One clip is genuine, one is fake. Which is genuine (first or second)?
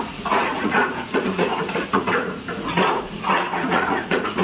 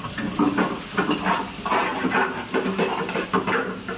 second